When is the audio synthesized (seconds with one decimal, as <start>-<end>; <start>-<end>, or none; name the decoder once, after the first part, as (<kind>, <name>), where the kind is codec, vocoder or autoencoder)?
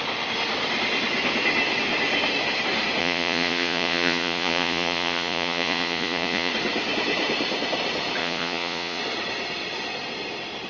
3.0-6.5 (vocoder, Vocos); 8.2-9.0